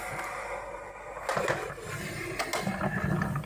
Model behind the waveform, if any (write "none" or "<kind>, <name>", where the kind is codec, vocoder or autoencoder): none